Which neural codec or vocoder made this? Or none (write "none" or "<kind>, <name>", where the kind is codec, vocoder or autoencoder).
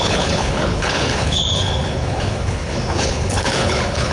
codec, HILCodec